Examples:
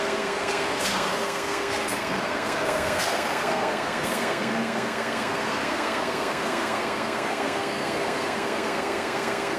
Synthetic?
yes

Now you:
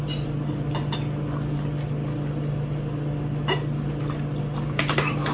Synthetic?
no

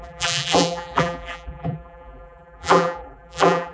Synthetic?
yes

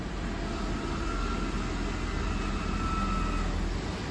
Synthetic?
no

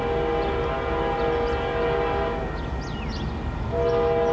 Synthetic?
no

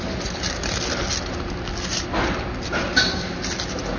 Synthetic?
no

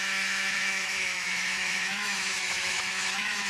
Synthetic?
yes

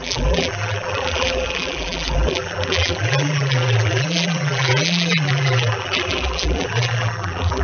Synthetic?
yes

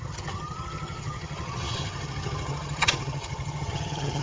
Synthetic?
yes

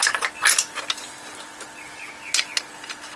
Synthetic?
no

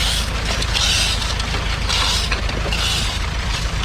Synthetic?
no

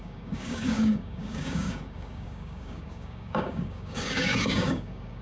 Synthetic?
yes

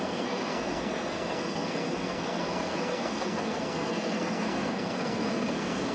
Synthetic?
yes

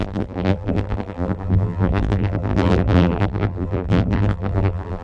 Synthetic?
yes